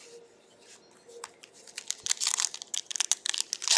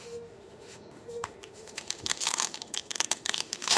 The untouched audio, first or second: first